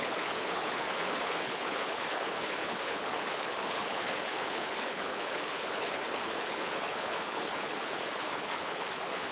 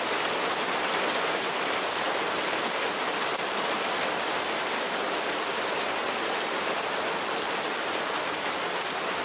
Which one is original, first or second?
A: second